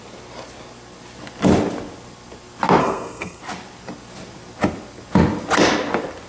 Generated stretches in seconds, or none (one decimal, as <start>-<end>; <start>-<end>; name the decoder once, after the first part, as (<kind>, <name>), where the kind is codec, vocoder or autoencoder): 2.8-3.4 (codec, SNAC)